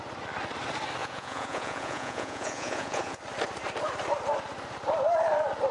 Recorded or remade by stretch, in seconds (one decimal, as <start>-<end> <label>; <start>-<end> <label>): 0.0-1.0 recorded; 1.0-3.2 remade; 3.2-5.7 recorded